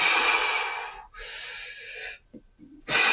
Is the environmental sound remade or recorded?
recorded